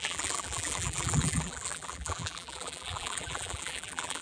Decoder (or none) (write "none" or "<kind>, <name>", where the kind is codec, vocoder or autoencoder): vocoder, BigVGAN v2